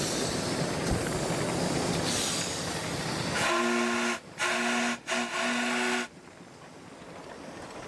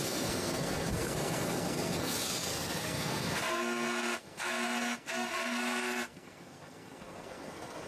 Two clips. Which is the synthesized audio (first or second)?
second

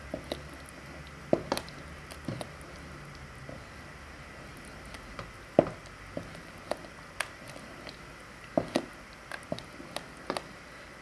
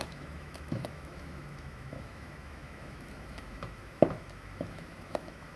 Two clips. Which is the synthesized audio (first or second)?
second